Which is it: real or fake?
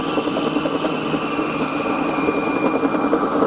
real